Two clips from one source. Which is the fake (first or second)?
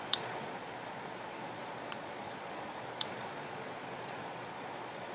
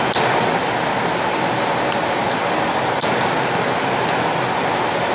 first